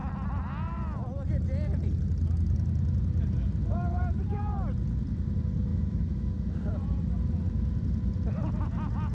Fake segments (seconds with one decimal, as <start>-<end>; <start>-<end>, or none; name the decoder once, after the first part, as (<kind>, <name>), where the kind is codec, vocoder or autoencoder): 5.7-6.3 (autoencoder, DAC-VAE)